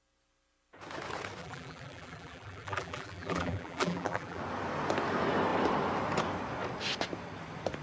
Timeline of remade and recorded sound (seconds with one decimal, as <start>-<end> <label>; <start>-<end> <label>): 0.0-1.4 recorded; 1.4-4.4 remade; 4.4-7.8 recorded